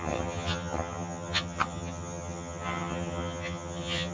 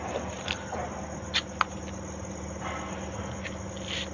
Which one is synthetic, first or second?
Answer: first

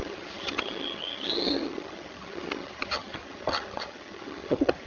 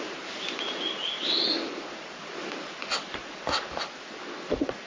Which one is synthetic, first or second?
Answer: first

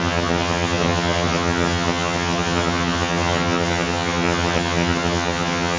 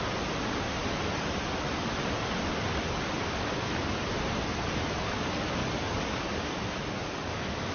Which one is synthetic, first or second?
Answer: first